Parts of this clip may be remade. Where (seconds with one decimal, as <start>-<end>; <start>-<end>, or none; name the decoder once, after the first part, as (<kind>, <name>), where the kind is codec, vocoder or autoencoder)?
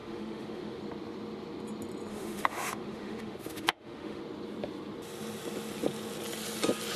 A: 0.0-0.8 (autoencoder, DAC-VAE); 2.1-4.2